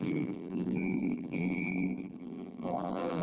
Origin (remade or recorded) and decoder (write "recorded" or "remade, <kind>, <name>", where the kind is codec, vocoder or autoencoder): remade, vocoder, BigVGAN v2